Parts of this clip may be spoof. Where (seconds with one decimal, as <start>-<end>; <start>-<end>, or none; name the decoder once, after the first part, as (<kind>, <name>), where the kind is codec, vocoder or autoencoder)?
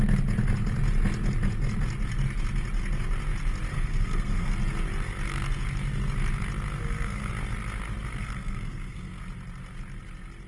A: 3.7-4.5 (codec, SNAC); 6.8-7.3; 8.2-9.2